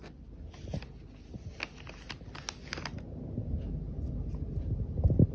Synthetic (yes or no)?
no